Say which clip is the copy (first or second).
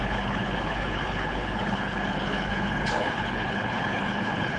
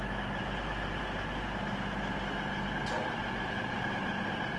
first